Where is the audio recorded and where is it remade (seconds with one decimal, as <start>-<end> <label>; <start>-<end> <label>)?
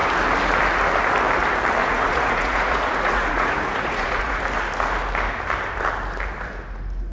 0.0-1.8 recorded; 1.8-4.4 remade; 4.4-7.1 recorded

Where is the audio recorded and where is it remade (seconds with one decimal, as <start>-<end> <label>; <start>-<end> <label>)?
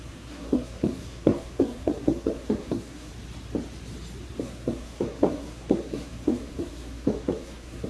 0.0-3.1 remade; 3.1-4.4 recorded; 4.4-7.9 remade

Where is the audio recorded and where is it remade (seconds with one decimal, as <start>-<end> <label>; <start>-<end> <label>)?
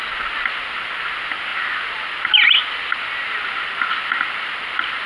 0.0-5.1 recorded